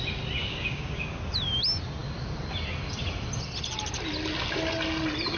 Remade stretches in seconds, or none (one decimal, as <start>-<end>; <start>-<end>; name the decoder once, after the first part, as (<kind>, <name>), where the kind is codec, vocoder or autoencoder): 0.4-1.2 (codec, DAC)